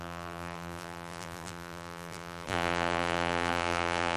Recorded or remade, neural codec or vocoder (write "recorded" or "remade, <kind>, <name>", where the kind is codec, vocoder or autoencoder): remade, vocoder, BigVGAN v2